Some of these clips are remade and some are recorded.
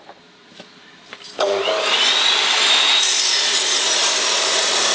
remade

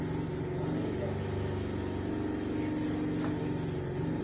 recorded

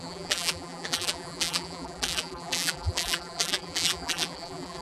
remade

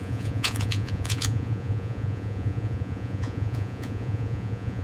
remade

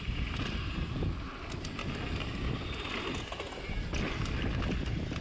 recorded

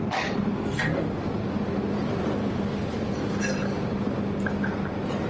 recorded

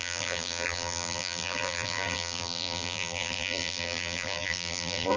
remade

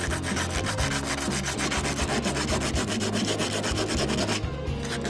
recorded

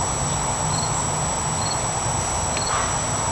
recorded